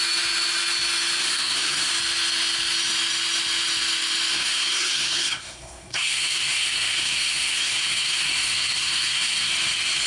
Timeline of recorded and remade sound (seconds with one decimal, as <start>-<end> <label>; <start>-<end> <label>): 0.0-1.2 recorded; 1.2-1.9 remade; 1.9-4.3 recorded; 4.3-9.5 remade; 9.5-10.1 recorded